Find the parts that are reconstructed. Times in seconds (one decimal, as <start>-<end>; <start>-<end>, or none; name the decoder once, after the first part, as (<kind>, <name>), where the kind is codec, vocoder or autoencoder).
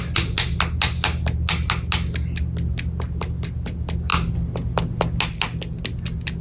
none